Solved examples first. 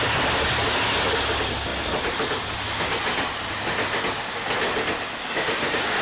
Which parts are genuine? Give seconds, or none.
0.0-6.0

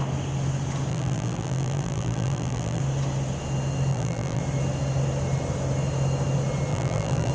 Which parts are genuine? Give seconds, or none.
0.0-0.9; 2.8-3.9; 4.4-6.7

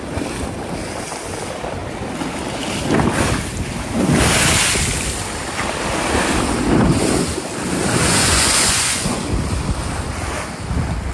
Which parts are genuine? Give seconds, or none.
0.0-8.0; 9.2-11.1

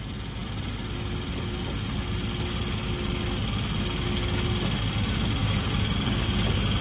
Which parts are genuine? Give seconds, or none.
0.0-5.4

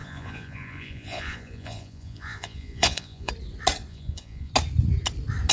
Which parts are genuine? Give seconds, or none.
3.3-3.9; 4.5-5.5

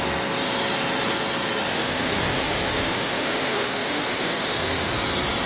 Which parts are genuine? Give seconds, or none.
0.0-1.7; 5.0-5.5